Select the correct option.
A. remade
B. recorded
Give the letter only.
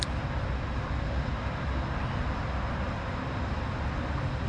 B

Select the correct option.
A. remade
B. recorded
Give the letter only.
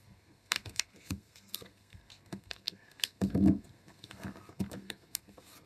A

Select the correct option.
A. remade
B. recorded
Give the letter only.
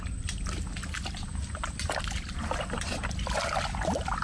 B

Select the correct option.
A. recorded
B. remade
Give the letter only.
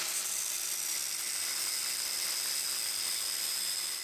A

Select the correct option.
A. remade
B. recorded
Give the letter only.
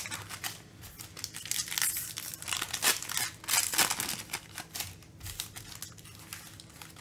B